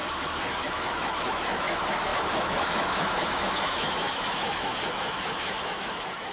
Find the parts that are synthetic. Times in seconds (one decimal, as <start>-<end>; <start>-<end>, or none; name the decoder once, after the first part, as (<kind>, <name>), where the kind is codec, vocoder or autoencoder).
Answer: 0.0-6.3 (autoencoder, DAC-VAE)